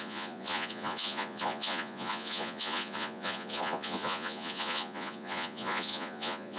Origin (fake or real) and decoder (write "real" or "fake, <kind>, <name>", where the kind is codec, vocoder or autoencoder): fake, vocoder, Vocos